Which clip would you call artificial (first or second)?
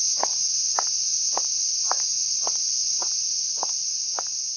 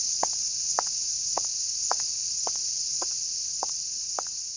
second